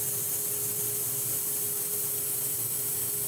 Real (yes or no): yes